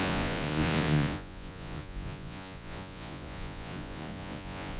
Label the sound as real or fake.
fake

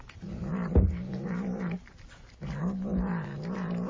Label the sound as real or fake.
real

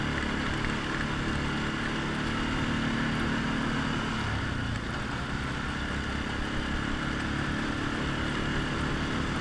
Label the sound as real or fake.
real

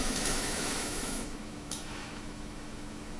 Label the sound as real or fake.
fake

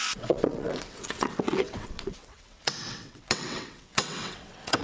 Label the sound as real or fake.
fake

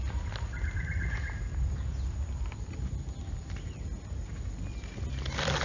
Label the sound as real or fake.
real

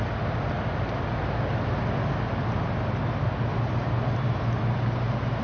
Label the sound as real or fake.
real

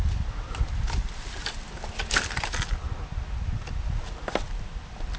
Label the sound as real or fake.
real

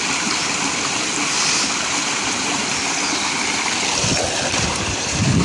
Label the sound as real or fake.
real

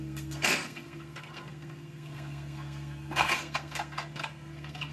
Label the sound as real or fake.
fake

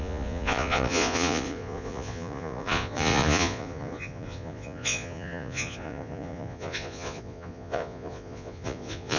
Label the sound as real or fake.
fake